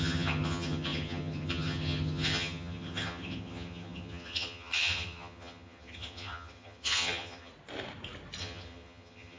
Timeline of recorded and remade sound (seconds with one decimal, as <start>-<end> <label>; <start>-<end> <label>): 0.0-7.5 remade; 7.5-8.4 recorded; 8.4-9.4 remade